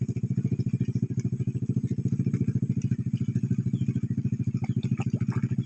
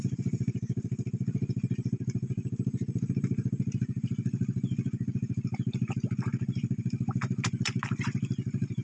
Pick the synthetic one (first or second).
second